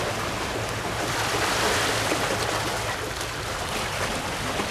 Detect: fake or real real